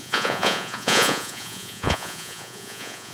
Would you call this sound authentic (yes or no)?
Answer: no